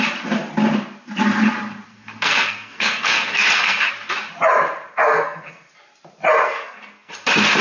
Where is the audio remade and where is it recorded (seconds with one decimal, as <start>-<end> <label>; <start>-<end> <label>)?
0.0-1.9 recorded; 1.9-3.9 remade; 3.9-4.9 recorded; 4.9-5.7 remade; 5.7-6.4 recorded; 6.4-7.1 remade; 7.1-7.6 recorded